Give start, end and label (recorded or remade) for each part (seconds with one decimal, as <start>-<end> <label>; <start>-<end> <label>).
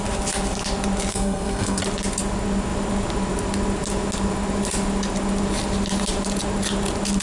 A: 0.0-1.1 recorded; 1.1-1.8 remade; 1.8-7.2 recorded